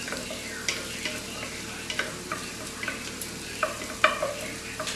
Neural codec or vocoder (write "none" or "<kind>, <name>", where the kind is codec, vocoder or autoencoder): none